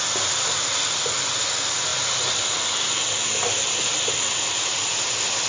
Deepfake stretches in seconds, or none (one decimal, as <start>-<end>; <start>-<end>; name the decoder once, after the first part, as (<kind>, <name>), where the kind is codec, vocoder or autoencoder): none